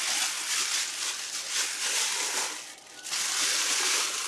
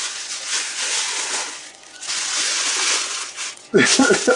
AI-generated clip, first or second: second